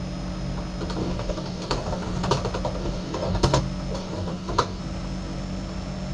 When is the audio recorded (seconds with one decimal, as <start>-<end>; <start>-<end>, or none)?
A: 0.0-1.0; 2.3-2.8; 3.6-4.0; 4.8-6.1